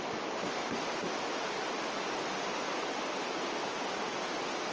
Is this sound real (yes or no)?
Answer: yes